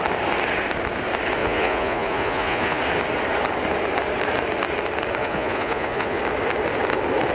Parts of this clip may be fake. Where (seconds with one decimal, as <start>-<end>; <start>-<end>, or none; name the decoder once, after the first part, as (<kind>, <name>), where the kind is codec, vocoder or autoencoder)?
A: 1.4-2.8 (vocoder, Vocos); 5.2-6.2